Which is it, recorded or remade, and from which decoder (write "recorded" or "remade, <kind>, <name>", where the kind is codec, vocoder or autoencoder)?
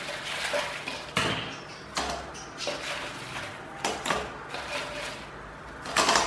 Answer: recorded